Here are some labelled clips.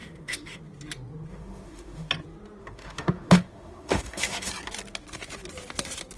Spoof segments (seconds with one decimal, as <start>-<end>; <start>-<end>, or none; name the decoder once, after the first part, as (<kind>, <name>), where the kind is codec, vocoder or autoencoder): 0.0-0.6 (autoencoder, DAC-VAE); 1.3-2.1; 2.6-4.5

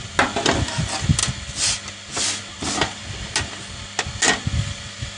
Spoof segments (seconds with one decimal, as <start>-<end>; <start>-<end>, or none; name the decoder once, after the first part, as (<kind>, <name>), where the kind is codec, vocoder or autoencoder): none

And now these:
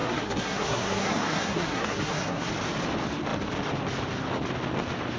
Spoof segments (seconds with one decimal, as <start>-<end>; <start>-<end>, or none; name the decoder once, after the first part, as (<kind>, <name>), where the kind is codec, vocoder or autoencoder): 0.0-2.5 (codec, SNAC)